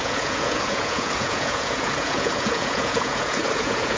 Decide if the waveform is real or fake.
fake